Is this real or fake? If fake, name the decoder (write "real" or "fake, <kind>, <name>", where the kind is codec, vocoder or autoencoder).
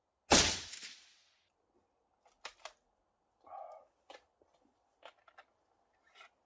real